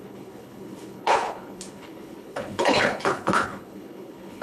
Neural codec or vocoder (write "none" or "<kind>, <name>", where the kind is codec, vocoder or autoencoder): codec, HILCodec